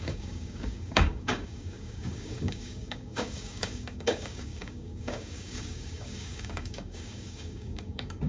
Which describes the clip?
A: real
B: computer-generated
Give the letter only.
B